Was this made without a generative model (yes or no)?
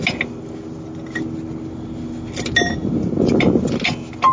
yes